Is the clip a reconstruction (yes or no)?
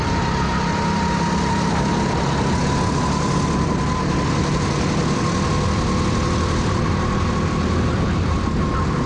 no